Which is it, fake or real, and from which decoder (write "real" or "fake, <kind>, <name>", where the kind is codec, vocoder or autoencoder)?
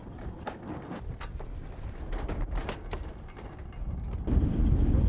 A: real